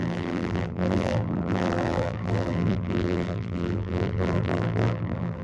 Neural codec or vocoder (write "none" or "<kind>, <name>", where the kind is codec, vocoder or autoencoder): vocoder, BigVGAN v2